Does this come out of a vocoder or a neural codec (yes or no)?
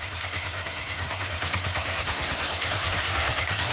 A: yes